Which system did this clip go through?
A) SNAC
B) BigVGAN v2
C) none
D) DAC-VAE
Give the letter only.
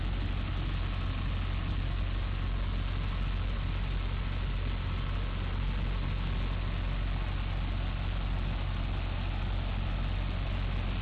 C